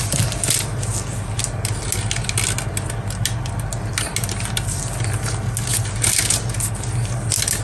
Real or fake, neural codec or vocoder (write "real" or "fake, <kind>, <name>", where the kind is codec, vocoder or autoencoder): real